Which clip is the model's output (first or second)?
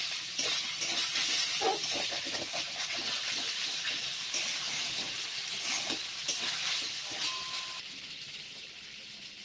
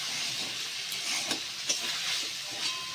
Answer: first